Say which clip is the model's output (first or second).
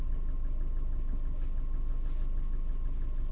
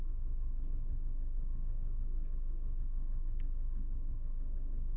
second